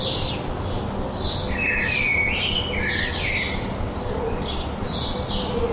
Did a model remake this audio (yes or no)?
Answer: no